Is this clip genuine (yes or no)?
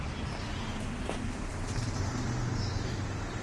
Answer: no